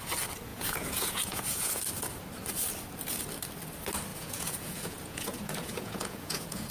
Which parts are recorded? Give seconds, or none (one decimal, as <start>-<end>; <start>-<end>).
0.0-0.5; 1.8-4.1